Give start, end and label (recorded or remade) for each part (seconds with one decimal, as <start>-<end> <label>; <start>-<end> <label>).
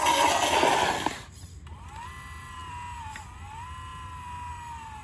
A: 0.0-5.0 recorded